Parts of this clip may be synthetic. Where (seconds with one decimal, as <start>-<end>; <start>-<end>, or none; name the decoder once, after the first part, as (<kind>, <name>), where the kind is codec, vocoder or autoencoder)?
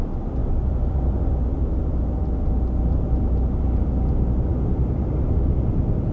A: none